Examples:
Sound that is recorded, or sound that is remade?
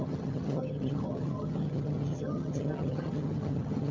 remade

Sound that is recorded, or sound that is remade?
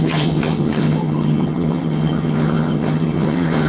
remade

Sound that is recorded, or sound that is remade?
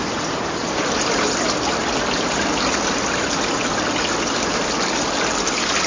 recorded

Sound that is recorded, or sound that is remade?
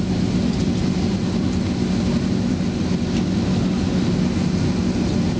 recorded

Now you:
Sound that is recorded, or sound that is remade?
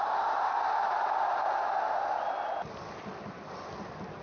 recorded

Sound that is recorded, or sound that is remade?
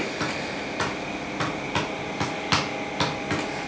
recorded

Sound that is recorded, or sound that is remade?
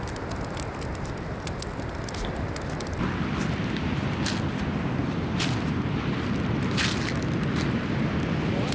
recorded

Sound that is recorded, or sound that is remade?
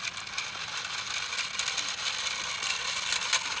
recorded